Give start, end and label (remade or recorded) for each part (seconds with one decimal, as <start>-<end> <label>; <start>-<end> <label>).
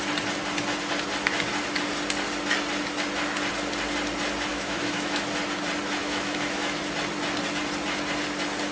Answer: 0.0-4.5 recorded; 4.5-5.2 remade; 5.2-6.0 recorded; 6.0-6.8 remade; 6.8-8.7 recorded